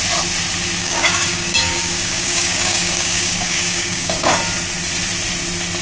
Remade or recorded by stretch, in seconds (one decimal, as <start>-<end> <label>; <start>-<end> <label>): 0.0-0.8 recorded; 0.8-4.3 remade; 4.3-5.8 recorded